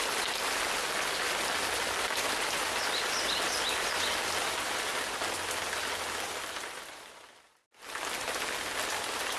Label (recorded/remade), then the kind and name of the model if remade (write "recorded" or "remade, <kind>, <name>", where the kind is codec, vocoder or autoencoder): recorded